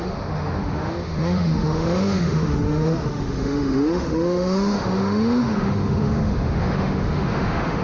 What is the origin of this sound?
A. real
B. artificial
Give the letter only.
B